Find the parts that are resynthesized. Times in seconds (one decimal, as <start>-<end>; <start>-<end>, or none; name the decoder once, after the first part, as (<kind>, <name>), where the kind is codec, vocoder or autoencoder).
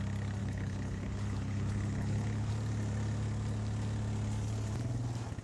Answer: 0.4-2.5 (codec, HILCodec)